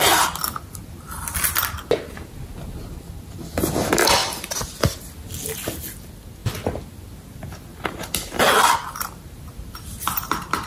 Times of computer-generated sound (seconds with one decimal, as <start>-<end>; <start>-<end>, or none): 4.2-5.0

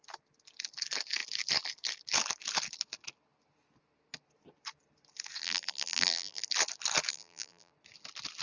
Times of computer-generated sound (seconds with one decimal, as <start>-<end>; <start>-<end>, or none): 5.4-6.4; 7.1-7.7

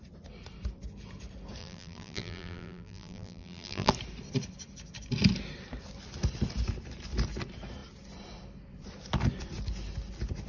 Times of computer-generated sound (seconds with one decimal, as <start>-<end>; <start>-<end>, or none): 1.6-3.9

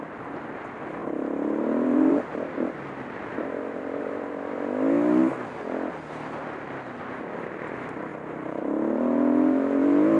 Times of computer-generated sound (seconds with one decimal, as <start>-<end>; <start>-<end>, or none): 1.0-4.6; 8.1-8.6